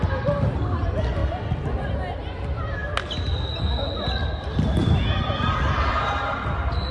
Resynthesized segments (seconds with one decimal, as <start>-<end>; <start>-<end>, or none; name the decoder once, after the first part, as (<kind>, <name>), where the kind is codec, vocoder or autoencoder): 1.2-1.9 (vocoder, BigVGAN v2); 4.8-5.9